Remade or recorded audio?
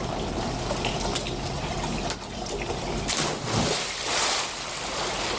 recorded